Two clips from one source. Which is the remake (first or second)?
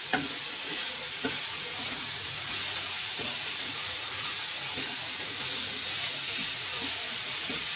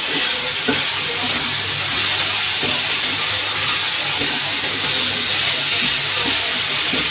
first